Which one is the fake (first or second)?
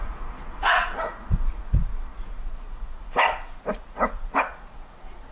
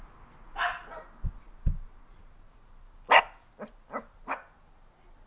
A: first